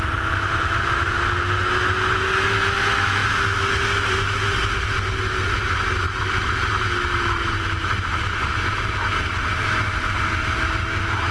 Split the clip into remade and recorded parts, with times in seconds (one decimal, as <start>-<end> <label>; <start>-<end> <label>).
0.0-11.3 recorded